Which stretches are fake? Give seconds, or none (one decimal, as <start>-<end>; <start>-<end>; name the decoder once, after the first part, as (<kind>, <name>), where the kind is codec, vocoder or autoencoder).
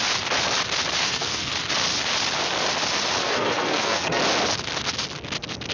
1.0-1.5 (codec, SNAC); 3.2-4.2